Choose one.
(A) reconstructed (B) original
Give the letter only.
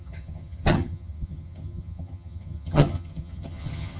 A